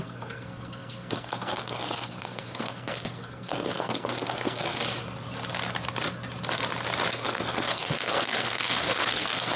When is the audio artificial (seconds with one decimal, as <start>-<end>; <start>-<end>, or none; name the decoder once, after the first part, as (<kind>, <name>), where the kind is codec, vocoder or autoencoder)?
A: 0.0-4.8 (codec, SNAC); 7.1-9.6